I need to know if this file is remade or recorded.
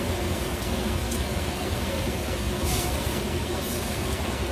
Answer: remade